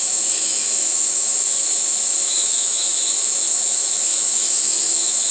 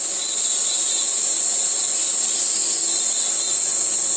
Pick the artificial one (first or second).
first